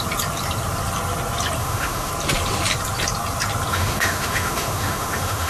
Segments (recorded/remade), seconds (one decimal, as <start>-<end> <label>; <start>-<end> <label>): 0.0-1.6 recorded; 1.6-2.1 remade; 2.1-3.7 recorded; 3.7-5.5 remade